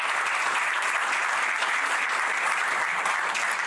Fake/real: real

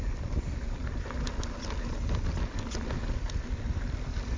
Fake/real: real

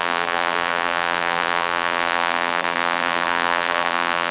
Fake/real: fake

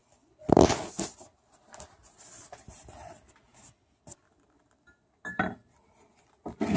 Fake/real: real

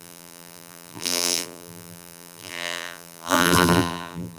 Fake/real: fake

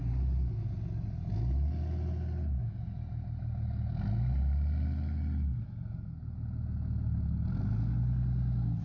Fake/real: real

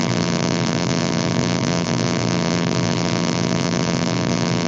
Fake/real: fake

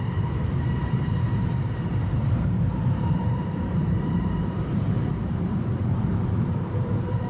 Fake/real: fake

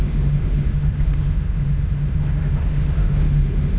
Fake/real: fake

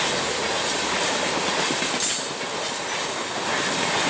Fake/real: real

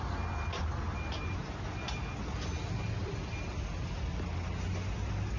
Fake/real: real